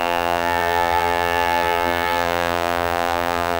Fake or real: fake